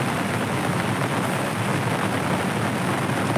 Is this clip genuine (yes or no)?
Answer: yes